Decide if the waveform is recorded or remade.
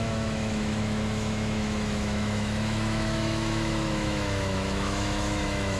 remade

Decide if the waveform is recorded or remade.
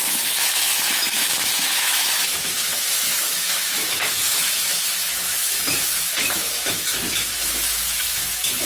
remade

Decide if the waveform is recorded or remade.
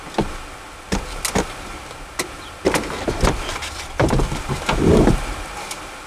recorded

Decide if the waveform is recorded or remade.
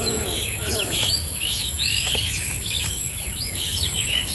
remade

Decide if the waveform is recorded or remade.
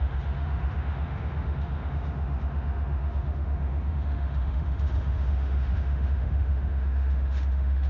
remade